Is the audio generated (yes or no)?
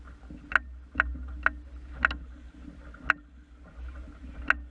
no